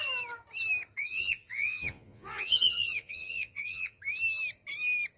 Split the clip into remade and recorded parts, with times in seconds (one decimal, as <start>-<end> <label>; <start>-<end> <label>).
0.0-1.0 recorded; 1.0-4.0 remade; 4.0-5.2 recorded